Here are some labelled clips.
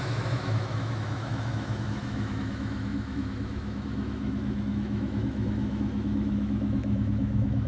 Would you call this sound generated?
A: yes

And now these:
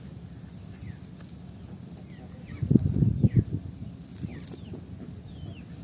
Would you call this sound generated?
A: no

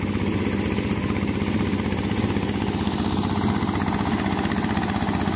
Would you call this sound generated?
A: no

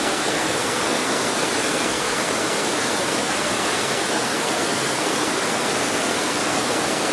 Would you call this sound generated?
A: yes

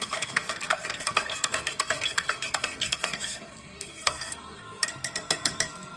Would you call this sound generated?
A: yes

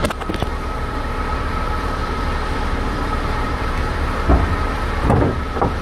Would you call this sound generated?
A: yes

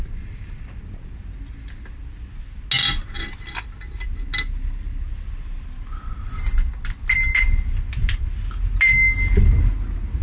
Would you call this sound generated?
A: no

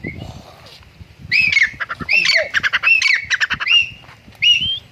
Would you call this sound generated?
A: no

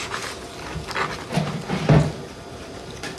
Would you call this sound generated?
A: no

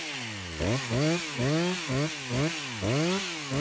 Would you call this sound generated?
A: no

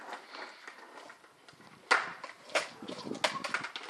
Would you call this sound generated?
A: no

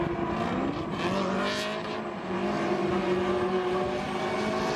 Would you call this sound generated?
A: no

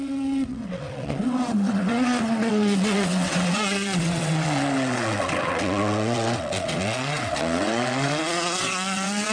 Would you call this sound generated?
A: yes